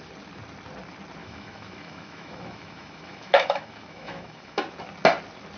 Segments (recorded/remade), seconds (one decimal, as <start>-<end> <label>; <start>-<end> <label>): 0.0-1.2 recorded; 1.2-4.6 remade; 4.6-5.6 recorded